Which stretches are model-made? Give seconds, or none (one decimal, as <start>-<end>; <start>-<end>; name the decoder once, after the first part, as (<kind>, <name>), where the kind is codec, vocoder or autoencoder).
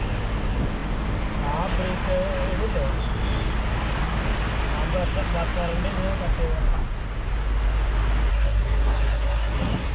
8.3-9.9 (codec, SNAC)